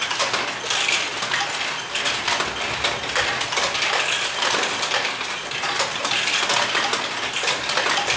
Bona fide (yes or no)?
yes